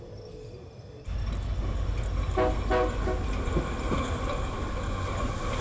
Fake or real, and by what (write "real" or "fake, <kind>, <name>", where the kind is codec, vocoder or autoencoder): real